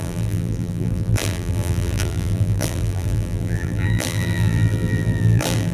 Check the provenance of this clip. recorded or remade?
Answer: remade